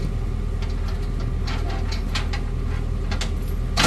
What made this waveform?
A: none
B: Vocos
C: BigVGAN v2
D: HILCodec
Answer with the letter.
A